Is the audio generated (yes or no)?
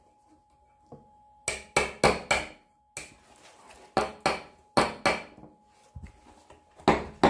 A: no